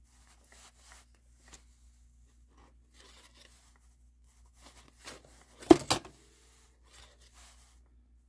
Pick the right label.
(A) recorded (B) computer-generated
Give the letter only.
A